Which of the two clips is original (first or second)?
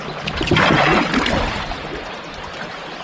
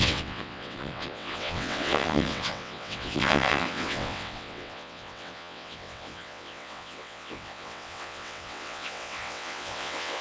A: first